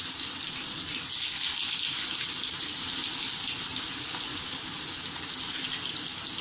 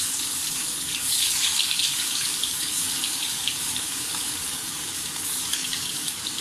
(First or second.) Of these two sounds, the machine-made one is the second